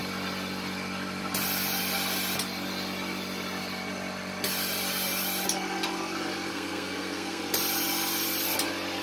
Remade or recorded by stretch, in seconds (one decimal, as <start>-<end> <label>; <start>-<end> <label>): 0.0-6.5 recorded; 6.5-7.4 remade; 7.4-9.0 recorded